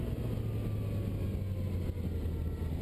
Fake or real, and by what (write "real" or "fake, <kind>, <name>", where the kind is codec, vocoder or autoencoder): real